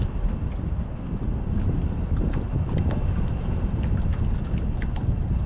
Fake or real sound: real